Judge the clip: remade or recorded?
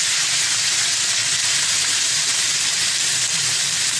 recorded